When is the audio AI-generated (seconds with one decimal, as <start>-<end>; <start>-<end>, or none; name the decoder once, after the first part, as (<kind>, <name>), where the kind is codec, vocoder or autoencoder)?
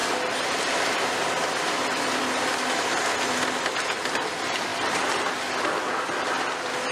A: none